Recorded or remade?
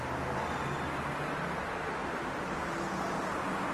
recorded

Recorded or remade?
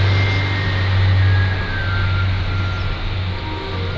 recorded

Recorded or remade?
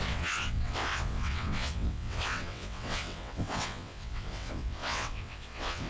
remade